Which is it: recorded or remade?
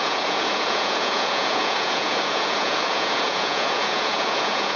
remade